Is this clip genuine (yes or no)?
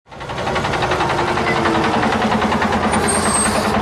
yes